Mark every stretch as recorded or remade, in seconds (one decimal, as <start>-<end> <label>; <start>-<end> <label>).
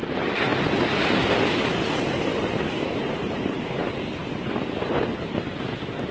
0.0-3.0 recorded; 3.0-3.8 remade; 3.8-4.2 recorded; 4.2-5.6 remade; 5.6-6.1 recorded